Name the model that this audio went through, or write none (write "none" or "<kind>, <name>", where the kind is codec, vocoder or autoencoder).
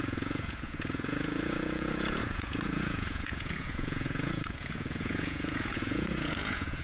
vocoder, Vocos